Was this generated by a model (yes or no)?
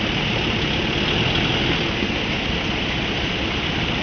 no